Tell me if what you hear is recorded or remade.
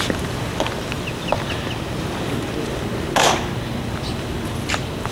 recorded